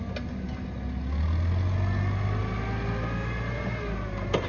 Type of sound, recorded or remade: recorded